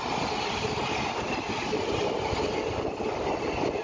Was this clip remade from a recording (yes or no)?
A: no